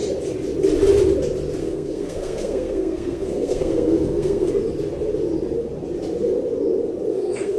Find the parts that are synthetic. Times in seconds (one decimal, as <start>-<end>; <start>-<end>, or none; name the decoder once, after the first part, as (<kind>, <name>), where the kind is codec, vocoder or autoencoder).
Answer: 1.6-4.5 (codec, SNAC); 7.1-7.6